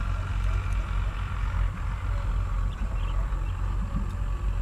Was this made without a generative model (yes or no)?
yes